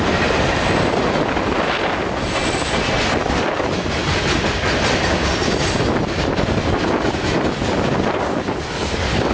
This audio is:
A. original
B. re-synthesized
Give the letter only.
A